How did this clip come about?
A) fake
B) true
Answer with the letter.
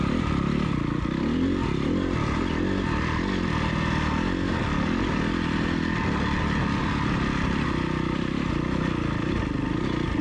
B